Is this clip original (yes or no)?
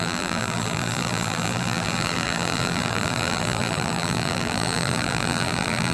no